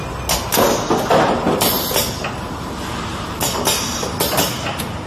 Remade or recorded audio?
recorded